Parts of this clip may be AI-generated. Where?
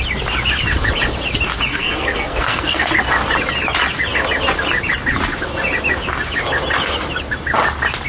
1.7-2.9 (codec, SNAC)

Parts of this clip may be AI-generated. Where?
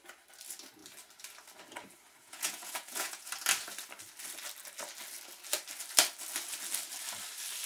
2.2-3.3 (vocoder, Vocos)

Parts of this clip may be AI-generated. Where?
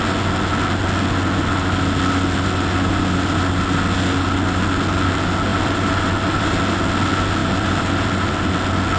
5.5-6.6 (vocoder, BigVGAN v2); 7.4-8.3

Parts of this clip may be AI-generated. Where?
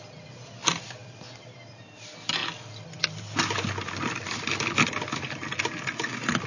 none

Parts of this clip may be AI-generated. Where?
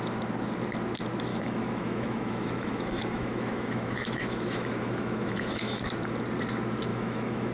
1.3-5.8 (autoencoder, DAC-VAE); 6.9-7.5